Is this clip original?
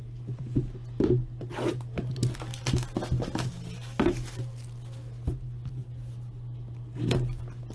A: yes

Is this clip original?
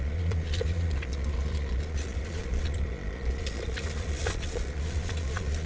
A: no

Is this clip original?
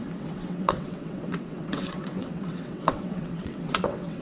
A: no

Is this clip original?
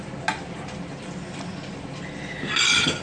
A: yes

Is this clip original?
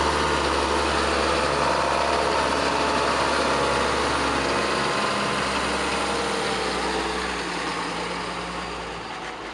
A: yes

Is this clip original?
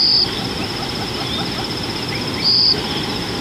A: yes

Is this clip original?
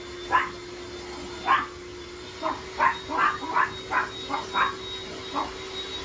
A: yes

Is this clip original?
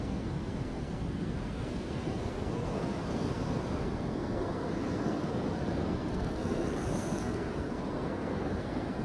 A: no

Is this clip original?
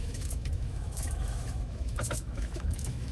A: no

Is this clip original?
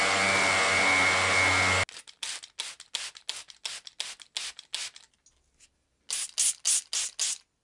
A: yes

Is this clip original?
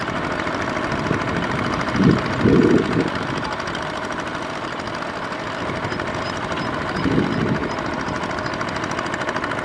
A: yes